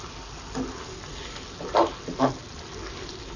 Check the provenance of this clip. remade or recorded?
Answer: recorded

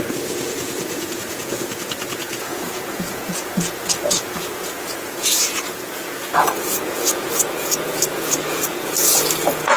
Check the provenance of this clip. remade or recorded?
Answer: remade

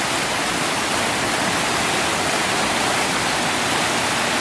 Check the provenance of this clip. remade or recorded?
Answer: recorded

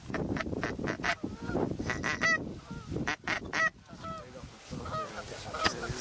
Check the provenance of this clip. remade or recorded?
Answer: recorded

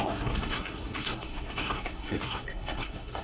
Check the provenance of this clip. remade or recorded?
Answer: remade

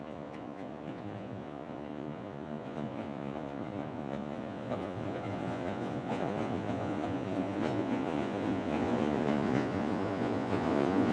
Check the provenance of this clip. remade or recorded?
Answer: remade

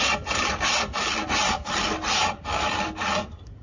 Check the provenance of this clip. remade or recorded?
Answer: recorded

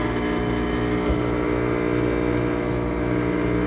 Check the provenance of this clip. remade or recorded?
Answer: recorded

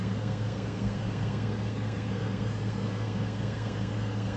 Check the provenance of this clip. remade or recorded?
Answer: remade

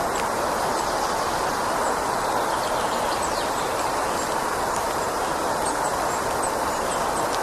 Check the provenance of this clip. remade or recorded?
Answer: recorded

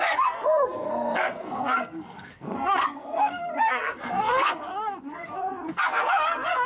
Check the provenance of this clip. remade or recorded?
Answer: remade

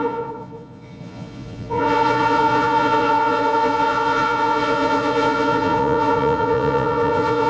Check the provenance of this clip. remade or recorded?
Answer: remade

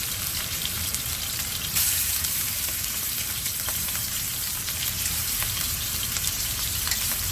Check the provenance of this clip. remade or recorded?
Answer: remade